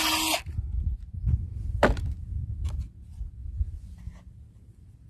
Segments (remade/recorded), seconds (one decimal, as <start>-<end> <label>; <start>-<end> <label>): 0.0-1.4 recorded; 1.4-2.1 remade; 2.1-3.4 recorded; 3.4-4.0 remade; 4.0-5.1 recorded